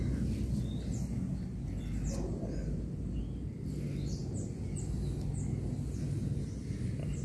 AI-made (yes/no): no